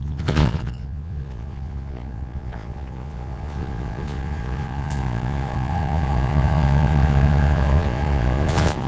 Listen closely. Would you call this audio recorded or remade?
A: remade